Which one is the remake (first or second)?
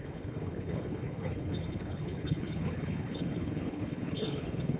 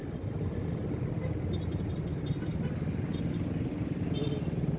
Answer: first